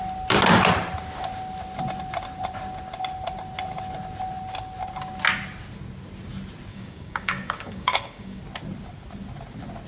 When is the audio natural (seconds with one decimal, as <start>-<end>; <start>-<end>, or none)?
0.0-6.7; 8.4-9.9